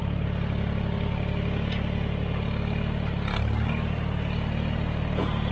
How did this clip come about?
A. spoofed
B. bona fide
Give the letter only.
B